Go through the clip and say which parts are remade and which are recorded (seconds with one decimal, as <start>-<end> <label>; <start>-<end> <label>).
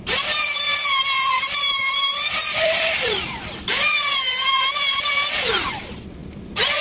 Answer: 0.0-6.8 recorded